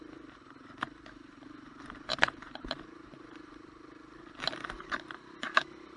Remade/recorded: remade